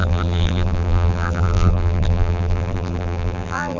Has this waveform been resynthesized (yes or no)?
yes